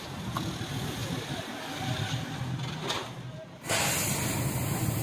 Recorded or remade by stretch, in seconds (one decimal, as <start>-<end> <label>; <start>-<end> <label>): 0.0-5.0 recorded

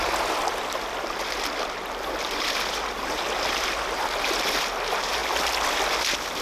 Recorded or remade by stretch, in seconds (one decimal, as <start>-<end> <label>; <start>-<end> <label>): 0.0-6.4 recorded